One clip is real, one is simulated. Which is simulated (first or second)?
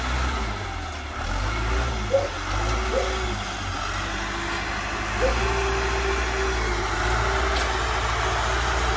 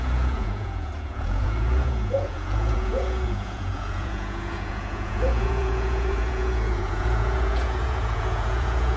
second